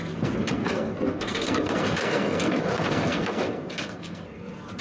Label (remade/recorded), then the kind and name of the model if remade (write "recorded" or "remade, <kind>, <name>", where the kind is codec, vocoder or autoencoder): remade, codec, SNAC